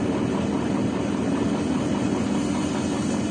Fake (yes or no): no